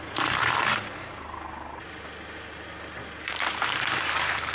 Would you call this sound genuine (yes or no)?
no